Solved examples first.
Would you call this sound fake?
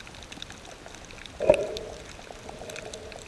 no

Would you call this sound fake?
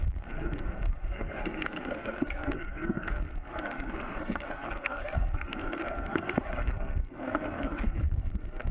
yes